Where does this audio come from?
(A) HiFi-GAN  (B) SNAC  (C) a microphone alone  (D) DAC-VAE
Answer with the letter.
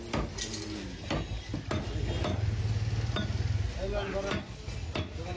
C